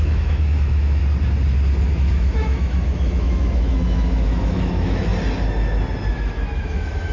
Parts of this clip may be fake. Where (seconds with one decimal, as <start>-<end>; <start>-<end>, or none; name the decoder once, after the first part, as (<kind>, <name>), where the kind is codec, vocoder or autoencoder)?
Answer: 0.0-1.0 (autoencoder, DAC-VAE); 1.9-5.1; 6.1-7.1